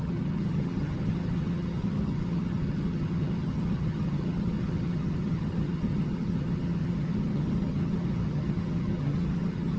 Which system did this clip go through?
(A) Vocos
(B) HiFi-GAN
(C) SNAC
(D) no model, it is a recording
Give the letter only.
B